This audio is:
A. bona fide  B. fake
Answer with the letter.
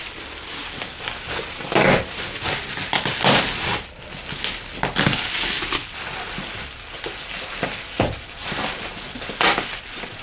A